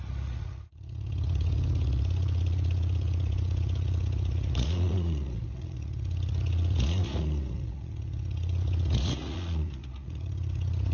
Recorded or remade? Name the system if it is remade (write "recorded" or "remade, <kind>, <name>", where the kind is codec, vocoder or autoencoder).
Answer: remade, vocoder, Vocos